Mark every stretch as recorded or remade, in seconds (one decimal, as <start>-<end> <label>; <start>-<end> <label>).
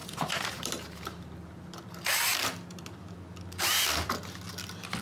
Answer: 0.0-1.2 remade; 1.2-5.0 recorded